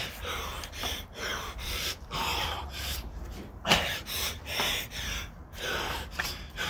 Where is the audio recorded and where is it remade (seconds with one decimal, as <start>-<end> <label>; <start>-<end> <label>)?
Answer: 0.0-6.7 remade